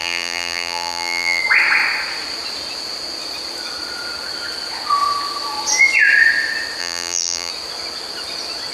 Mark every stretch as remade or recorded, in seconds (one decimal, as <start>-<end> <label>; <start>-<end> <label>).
0.0-1.4 remade; 1.4-6.8 recorded; 6.8-7.5 remade; 7.5-8.7 recorded